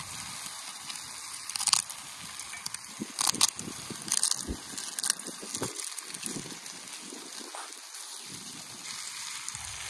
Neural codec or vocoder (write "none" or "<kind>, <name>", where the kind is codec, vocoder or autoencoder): none